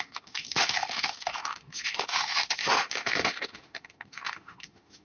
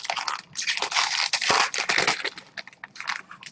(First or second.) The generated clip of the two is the first